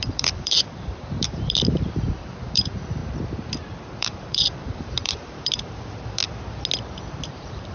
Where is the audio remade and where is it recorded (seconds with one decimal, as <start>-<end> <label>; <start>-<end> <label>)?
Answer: 0.0-3.0 remade; 3.0-4.0 recorded; 4.0-6.2 remade; 6.2-7.2 recorded; 7.2-7.7 remade

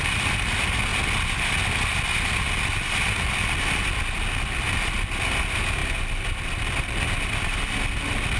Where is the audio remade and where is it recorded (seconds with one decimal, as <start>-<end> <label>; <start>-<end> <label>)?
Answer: 0.0-5.8 recorded; 5.8-7.7 remade; 7.7-8.4 recorded

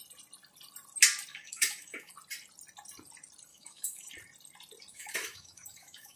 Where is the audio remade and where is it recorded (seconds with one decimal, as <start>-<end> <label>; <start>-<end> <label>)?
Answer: 0.0-1.3 recorded; 1.3-2.1 remade; 2.1-3.5 recorded; 3.5-4.1 remade; 4.1-4.9 recorded; 4.9-6.2 remade